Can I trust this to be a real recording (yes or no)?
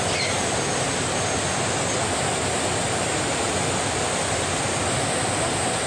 yes